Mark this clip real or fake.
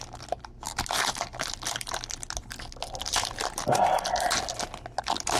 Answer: real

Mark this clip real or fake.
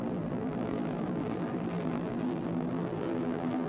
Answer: fake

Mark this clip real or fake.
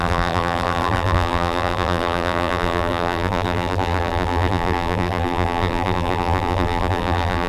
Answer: fake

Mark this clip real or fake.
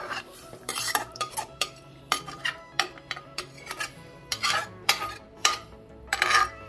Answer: fake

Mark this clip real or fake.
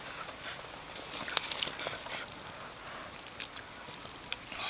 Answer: real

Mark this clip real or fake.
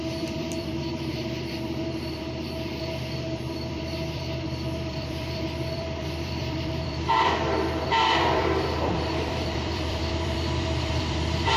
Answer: fake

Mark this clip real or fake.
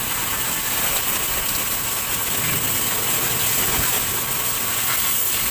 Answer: real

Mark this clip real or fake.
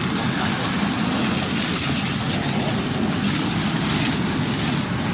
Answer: real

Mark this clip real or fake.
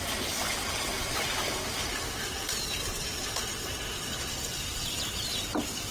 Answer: real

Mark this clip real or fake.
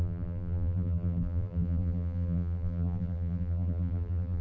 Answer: fake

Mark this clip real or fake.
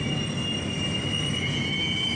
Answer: real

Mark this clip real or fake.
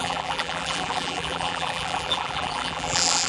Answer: fake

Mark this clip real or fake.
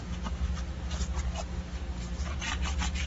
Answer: real